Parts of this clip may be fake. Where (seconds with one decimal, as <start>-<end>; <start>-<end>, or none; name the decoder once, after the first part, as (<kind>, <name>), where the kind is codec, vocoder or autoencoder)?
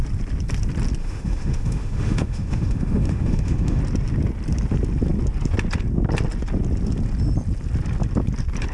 1.0-3.8 (autoencoder, DAC-VAE)